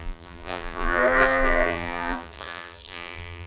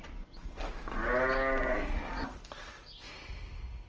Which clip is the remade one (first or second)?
first